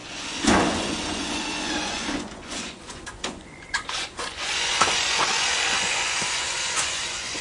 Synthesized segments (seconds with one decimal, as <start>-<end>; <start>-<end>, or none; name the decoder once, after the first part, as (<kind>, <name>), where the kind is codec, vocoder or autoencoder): 0.0-7.4 (vocoder, Vocos)